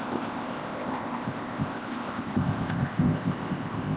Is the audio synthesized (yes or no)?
yes